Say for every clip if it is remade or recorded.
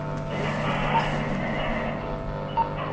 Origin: recorded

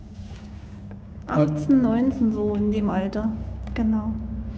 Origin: remade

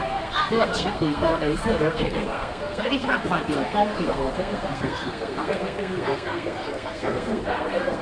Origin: remade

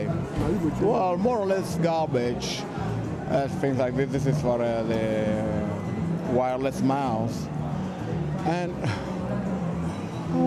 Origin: recorded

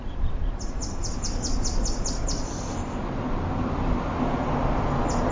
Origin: recorded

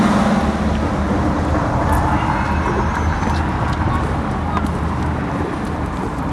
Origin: recorded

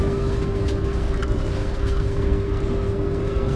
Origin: remade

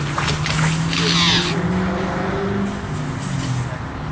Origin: recorded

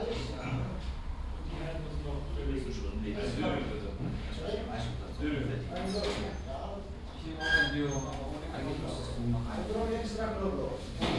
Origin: recorded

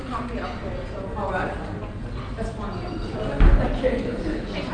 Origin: recorded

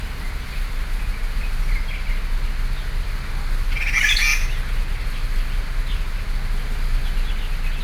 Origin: recorded